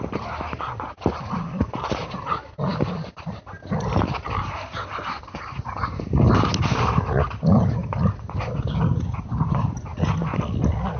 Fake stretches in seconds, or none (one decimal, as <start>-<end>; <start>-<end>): 0.0-11.0